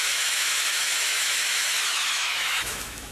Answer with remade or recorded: remade